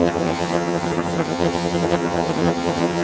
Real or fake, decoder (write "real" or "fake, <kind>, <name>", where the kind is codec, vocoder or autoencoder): fake, vocoder, HiFi-GAN